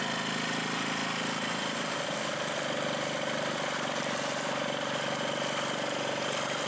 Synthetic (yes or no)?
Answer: no